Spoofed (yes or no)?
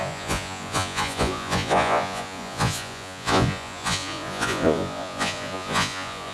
yes